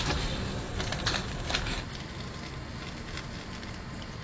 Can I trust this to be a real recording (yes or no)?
yes